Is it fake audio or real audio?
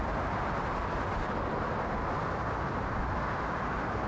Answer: real